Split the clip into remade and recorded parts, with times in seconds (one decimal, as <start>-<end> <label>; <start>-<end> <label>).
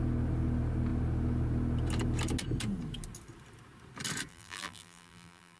0.0-4.3 recorded; 4.3-5.6 remade